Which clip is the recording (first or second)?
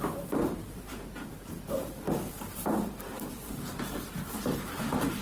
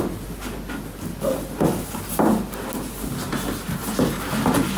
second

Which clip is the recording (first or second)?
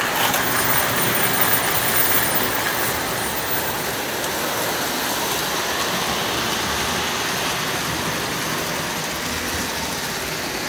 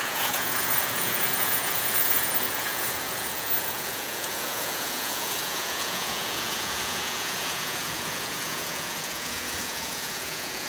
first